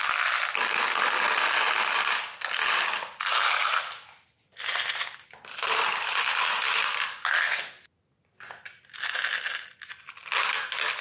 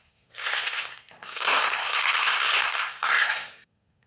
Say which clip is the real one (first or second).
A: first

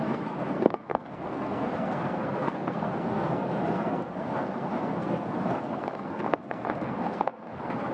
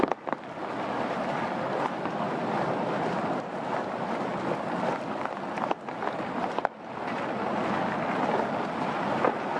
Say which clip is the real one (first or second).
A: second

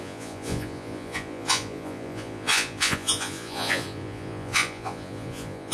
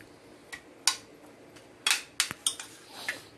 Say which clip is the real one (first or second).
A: second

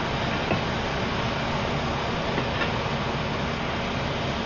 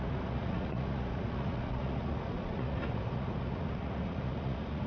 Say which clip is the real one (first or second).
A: first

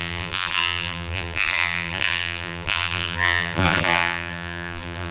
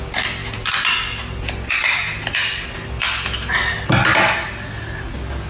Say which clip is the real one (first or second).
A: second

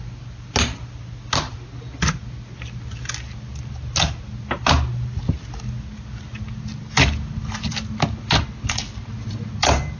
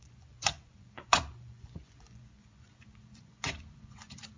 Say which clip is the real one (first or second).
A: first